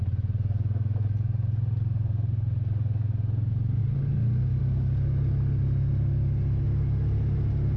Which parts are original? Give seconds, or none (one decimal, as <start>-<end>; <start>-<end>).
0.0-7.8